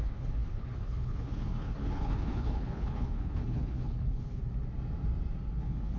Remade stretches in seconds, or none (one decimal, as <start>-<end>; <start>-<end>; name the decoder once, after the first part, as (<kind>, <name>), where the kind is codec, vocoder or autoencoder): 0.0-4.4 (codec, HILCodec); 5.6-6.0